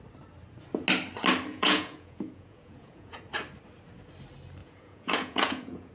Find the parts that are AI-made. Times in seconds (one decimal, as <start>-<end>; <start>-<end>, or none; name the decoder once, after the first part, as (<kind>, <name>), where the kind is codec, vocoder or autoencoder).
1.5-3.2 (vocoder, Vocos); 4.6-5.9